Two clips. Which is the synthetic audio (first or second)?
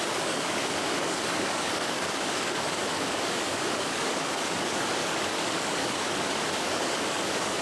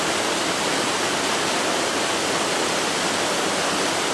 first